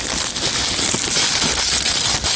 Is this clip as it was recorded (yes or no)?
yes